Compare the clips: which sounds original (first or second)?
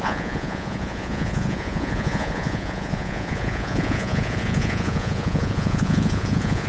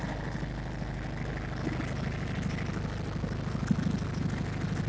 second